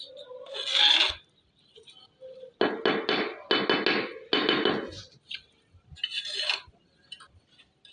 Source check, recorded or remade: recorded